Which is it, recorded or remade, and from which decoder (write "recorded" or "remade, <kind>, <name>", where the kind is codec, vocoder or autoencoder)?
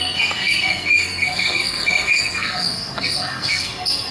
remade, codec, SNAC